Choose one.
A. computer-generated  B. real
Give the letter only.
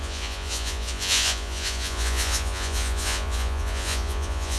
A